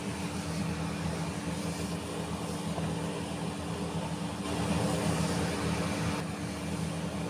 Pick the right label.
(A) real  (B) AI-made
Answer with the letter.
A